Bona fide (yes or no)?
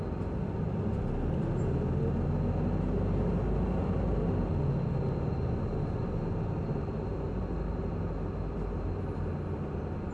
yes